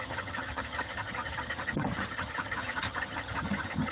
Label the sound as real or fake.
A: fake